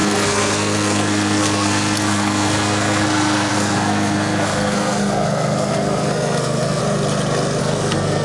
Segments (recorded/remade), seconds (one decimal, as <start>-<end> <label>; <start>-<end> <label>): 0.0-6.8 remade; 6.8-7.6 recorded; 7.6-8.2 remade